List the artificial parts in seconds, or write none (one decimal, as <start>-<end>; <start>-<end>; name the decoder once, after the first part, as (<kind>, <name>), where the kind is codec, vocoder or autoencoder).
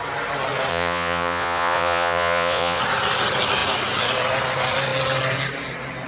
0.7-2.8 (vocoder, Vocos)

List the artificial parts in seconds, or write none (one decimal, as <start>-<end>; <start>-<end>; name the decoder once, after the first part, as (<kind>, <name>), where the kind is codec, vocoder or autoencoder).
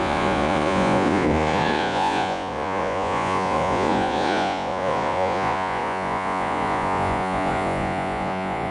0.0-8.7 (vocoder, Vocos)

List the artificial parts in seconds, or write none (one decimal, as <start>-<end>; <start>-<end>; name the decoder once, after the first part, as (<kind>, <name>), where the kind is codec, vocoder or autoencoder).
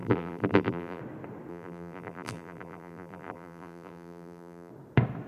0.0-1.0 (vocoder, BigVGAN v2); 1.5-4.7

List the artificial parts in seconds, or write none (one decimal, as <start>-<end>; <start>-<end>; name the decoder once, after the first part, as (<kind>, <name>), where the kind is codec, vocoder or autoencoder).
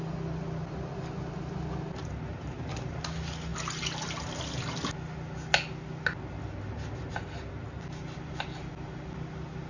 2.3-3.0 (vocoder, BigVGAN v2)